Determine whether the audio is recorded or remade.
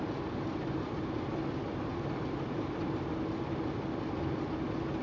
recorded